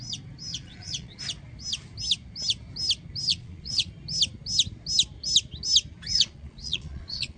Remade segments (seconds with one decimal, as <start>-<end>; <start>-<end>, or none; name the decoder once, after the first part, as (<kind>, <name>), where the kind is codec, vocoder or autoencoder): 0.5-1.2 (vocoder, Vocos); 3.3-3.9; 6.1-7.4